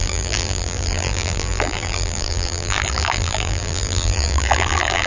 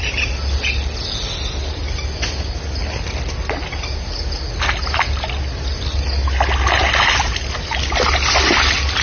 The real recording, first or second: second